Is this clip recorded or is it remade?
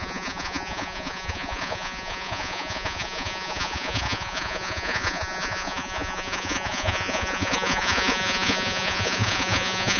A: remade